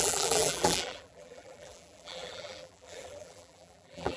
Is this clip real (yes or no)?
no